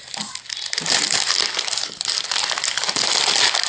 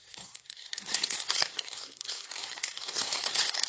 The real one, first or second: first